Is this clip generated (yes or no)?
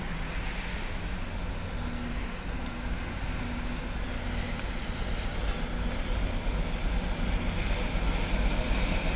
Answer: no